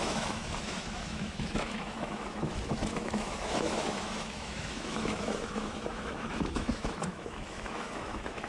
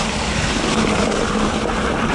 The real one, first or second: second